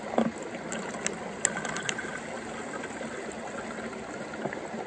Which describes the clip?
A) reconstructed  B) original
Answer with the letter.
B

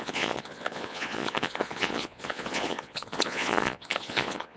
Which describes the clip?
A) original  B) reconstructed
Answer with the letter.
B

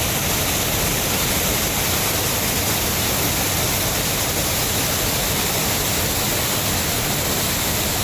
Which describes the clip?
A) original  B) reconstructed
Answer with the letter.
A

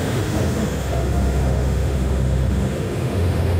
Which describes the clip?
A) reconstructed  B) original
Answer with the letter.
A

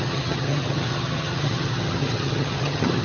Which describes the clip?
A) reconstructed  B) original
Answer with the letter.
A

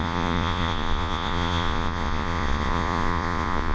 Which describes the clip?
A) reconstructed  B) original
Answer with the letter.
A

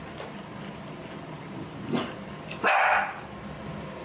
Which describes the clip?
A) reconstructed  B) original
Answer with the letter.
B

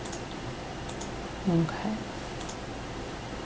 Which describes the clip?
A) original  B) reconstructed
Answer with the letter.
A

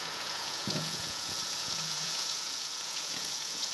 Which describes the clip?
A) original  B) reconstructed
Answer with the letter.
B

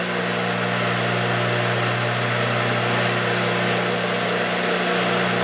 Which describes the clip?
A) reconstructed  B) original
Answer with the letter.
B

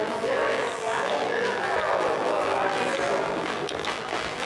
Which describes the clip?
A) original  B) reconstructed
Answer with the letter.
B